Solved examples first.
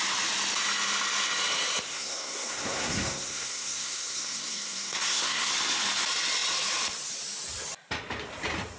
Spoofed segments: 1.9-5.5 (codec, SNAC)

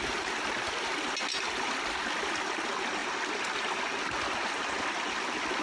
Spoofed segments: none